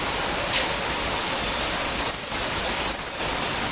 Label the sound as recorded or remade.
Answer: recorded